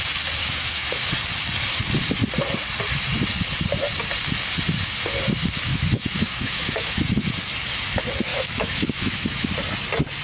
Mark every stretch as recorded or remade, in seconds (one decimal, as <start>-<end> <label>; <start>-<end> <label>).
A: 0.0-0.4 recorded; 0.4-1.0 remade; 1.0-5.7 recorded; 5.7-7.3 remade; 7.3-8.3 recorded; 8.3-9.5 remade; 9.5-10.2 recorded